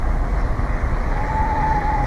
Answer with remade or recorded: remade